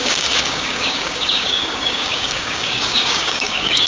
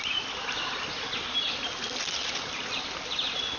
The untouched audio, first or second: second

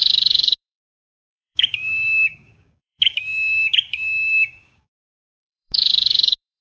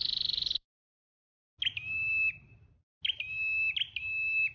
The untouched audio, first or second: second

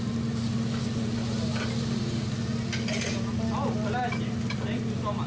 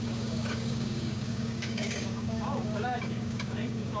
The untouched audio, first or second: first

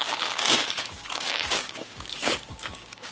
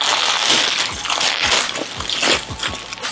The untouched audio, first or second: second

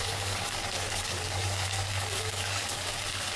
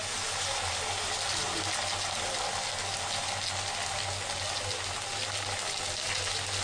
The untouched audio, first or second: second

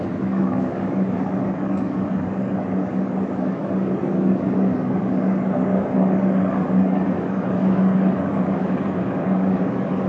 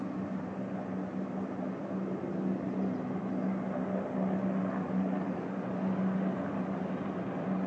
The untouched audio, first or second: second